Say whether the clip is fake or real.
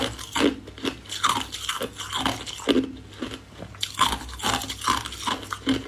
real